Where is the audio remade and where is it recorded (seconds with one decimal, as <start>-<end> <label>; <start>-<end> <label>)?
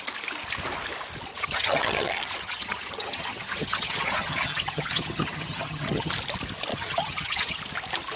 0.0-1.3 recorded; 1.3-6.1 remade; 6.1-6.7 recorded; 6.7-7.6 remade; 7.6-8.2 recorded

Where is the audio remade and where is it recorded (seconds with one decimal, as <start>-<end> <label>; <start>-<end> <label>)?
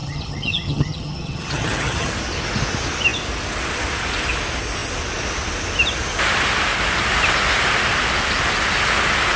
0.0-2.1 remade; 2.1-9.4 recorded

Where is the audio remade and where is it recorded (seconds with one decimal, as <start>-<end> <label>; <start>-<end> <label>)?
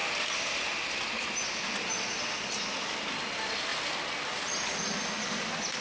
0.0-5.8 recorded